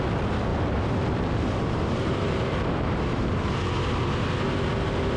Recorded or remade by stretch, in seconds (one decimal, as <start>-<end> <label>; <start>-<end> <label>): 0.0-0.5 recorded; 0.5-3.6 remade; 3.6-5.2 recorded